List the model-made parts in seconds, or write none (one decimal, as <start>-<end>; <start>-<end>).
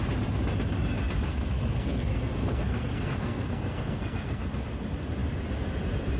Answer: 1.3-4.4